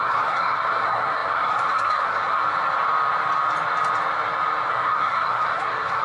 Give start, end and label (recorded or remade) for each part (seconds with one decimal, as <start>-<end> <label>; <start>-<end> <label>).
0.0-2.4 remade; 2.4-4.7 recorded; 4.7-6.0 remade